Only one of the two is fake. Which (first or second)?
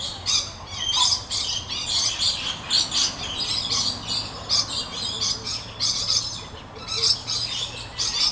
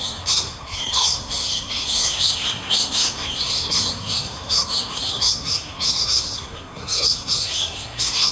second